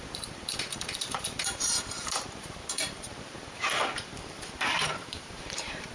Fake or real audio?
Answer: fake